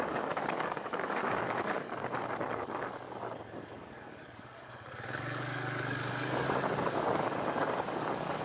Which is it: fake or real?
fake